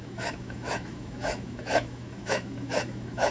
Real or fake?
fake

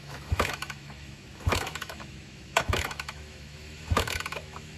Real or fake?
fake